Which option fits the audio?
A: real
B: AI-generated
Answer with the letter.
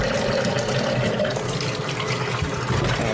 A